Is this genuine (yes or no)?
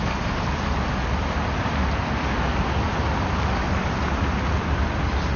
no